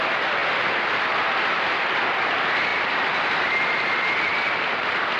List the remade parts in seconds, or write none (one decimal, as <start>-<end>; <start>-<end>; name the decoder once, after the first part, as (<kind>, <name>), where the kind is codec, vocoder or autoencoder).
2.7-4.6 (vocoder, BigVGAN v2)